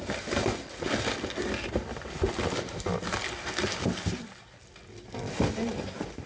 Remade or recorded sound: recorded